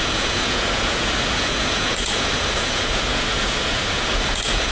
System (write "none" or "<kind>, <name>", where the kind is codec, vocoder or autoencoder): vocoder, Vocos